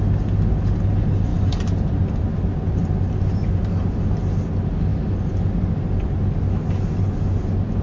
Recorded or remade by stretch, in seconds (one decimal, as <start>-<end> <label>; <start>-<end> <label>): 0.0-1.3 recorded; 1.3-2.2 remade; 2.2-7.8 recorded

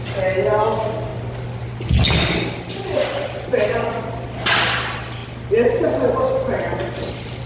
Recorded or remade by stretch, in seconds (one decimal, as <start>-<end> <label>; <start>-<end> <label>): 0.0-7.5 recorded